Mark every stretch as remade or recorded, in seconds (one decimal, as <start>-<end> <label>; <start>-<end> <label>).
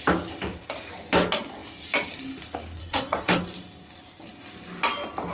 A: 0.0-2.8 recorded; 2.8-3.4 remade; 3.4-5.3 recorded